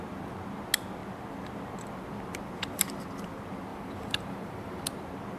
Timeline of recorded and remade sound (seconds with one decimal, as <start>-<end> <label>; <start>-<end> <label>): 0.0-3.7 recorded; 3.7-4.8 remade; 4.8-5.4 recorded